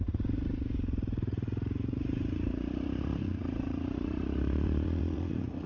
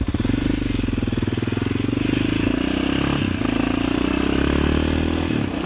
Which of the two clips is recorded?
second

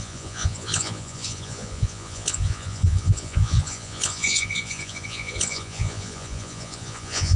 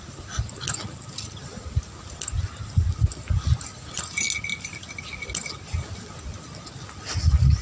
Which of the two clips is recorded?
second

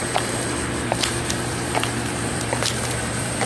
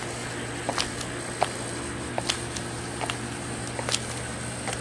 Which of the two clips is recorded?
second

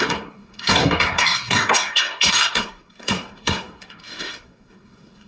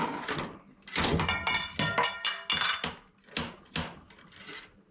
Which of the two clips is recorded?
second